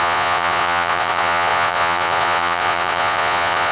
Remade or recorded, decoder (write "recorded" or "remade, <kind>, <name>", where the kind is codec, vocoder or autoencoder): remade, vocoder, Vocos